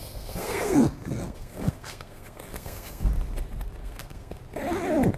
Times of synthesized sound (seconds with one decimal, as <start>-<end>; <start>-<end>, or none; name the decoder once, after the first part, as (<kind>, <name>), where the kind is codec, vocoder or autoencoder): 0.0-3.1 (codec, SNAC); 3.8-4.4